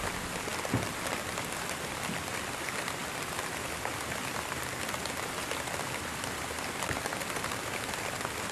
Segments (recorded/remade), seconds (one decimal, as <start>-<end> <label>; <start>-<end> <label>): 0.0-0.5 remade; 0.5-1.1 recorded; 1.1-8.5 remade